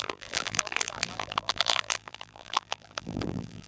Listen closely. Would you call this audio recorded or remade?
remade